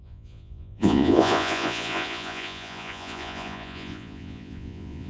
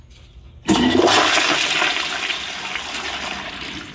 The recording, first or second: second